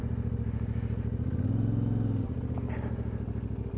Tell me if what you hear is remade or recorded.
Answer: recorded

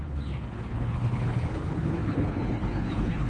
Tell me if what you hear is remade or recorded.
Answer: remade